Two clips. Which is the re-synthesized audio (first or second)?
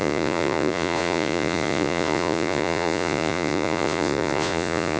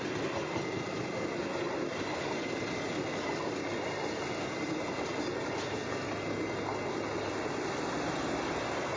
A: first